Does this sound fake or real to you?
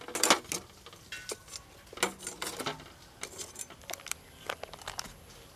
real